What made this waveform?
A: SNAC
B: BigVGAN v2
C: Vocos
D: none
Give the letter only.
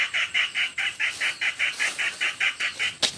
D